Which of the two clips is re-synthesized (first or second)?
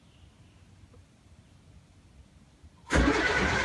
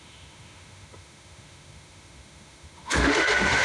second